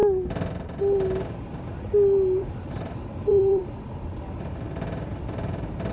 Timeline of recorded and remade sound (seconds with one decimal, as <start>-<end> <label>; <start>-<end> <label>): 0.0-2.4 recorded; 2.4-3.6 remade; 3.6-5.9 recorded